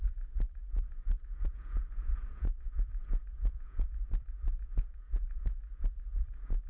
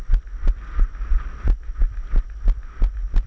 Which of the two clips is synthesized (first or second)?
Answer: first